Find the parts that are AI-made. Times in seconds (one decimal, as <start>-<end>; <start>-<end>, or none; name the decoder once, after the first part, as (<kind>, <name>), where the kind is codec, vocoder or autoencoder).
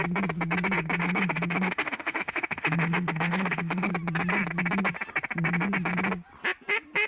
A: 1.0-3.9 (autoencoder, DAC-VAE)